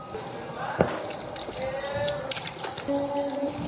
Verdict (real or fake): real